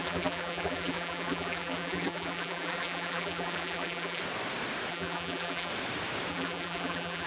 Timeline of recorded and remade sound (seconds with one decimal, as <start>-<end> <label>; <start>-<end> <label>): 0.0-4.2 remade; 4.2-4.9 recorded; 4.9-5.7 remade; 5.7-6.3 recorded; 6.3-7.3 remade